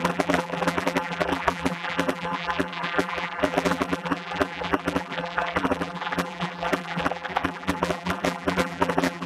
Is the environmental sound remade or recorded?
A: remade